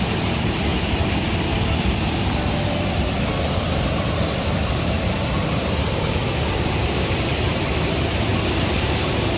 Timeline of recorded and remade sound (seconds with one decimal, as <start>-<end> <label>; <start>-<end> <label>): 0.0-0.7 remade; 0.7-4.7 recorded; 4.7-6.2 remade; 6.2-6.7 recorded; 6.7-8.3 remade; 8.3-9.4 recorded